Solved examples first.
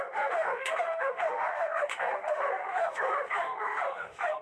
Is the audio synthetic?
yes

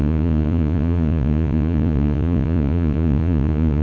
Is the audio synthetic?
yes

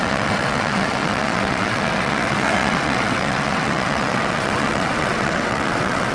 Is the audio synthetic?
yes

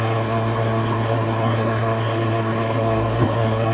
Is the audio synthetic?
yes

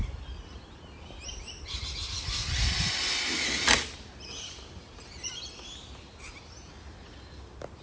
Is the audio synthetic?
no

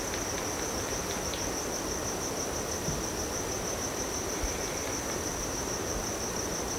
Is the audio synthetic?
no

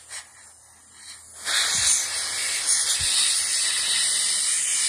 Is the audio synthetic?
no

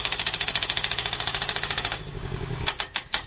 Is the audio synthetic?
yes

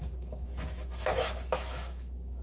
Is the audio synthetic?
yes